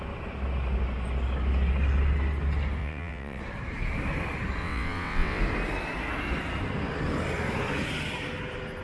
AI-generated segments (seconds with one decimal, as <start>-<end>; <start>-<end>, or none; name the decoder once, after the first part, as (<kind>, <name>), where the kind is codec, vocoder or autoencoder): 2.8-3.4 (vocoder, WaveNeXt); 4.6-5.4